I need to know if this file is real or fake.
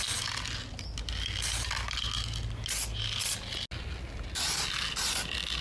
real